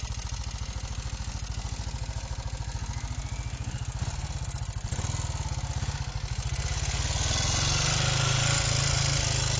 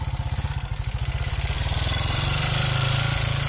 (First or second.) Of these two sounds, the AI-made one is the second